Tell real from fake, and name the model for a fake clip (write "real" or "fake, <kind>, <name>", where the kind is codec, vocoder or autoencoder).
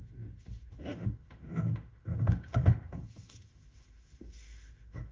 fake, autoencoder, DAC-VAE